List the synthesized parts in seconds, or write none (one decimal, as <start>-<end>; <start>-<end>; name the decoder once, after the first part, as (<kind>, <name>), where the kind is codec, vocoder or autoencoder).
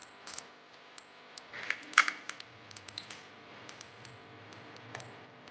3.3-5.5 (vocoder, BigVGAN v2)